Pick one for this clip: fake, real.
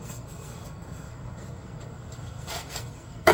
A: fake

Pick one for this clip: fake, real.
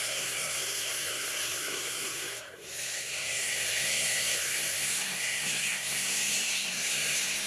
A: fake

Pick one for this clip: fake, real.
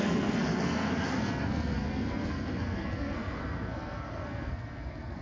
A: fake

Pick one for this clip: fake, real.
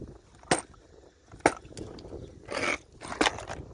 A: real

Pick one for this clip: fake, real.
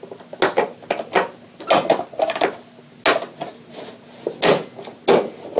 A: real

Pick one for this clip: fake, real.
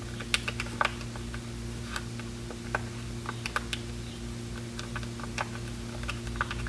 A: real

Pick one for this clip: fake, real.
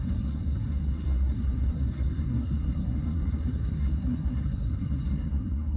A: fake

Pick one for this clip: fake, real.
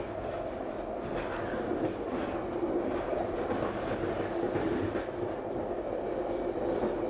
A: real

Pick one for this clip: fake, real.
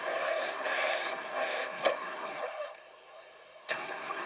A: fake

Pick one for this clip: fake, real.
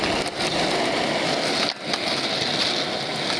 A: real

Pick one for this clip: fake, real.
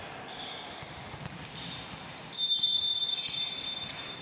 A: real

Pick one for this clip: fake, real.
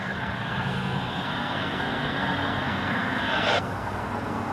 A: fake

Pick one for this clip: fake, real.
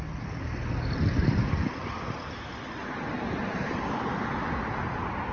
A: real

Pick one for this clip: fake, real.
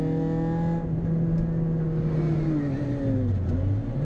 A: real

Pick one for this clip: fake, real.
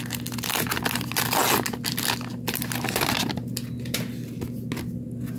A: real